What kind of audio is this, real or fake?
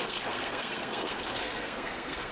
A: fake